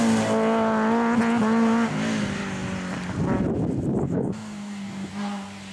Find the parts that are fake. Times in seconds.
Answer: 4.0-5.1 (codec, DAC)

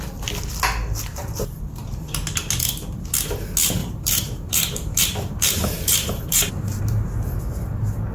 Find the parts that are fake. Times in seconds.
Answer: 1.1-1.6 (vocoder, BigVGAN v2); 3.8-6.8

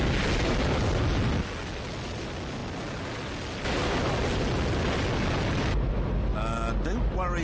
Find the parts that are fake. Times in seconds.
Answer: none

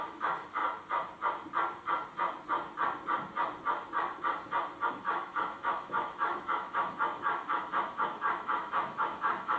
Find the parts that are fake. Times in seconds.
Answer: 0.0-0.6 (autoencoder, DAC-VAE); 4.9-9.6

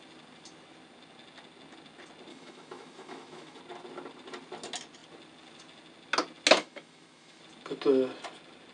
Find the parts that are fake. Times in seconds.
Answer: 2.3-3.6 (autoencoder, DAC-VAE); 6.6-7.4

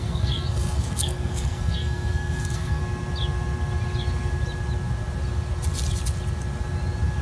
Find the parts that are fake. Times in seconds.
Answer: 0.0-2.8 (codec, SNAC)

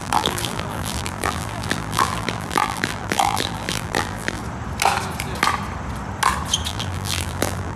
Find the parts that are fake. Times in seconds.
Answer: 0.0-4.4 (vocoder, BigVGAN v2); 6.7-7.8